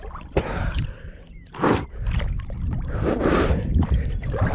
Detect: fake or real fake